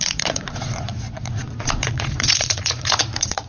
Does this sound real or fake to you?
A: fake